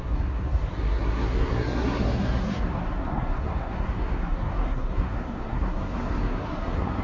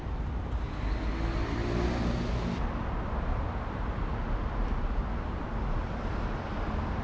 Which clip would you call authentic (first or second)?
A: second